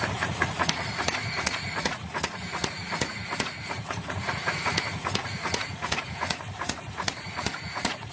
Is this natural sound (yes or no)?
no